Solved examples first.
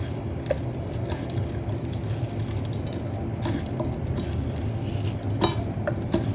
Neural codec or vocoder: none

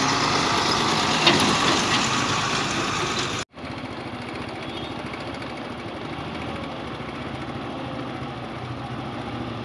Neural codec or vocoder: none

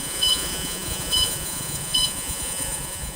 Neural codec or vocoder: vocoder, Vocos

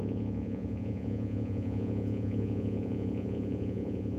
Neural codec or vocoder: vocoder, Vocos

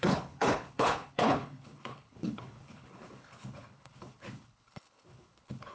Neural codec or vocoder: codec, HILCodec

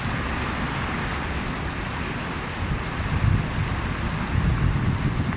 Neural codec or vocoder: none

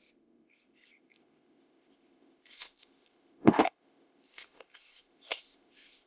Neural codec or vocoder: codec, ZipCodec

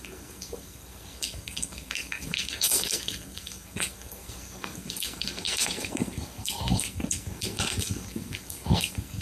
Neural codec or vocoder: codec, SNAC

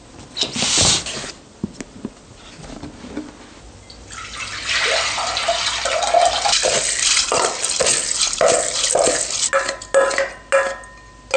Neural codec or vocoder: none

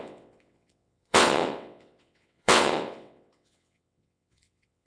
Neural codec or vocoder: vocoder, WaveNeXt